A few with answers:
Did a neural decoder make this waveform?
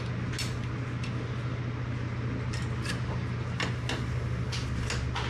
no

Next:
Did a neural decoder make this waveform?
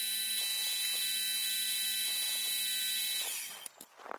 no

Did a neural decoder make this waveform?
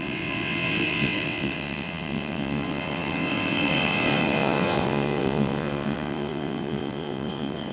yes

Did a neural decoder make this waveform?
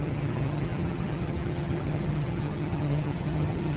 yes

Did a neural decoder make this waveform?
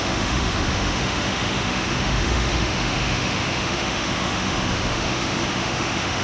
yes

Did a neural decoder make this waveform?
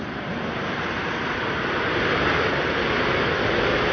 no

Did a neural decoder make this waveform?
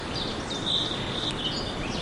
no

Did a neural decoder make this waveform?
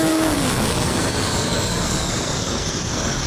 yes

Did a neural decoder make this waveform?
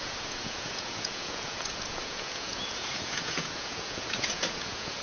yes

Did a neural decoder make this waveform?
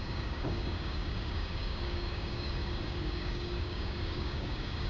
yes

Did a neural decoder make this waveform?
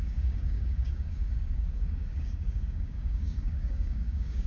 yes